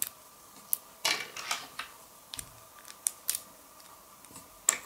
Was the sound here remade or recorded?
recorded